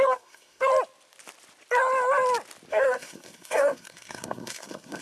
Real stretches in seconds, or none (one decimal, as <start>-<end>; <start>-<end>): 0.7-2.7